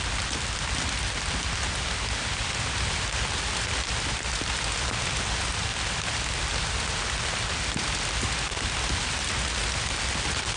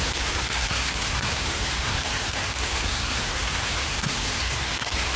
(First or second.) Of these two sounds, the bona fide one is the first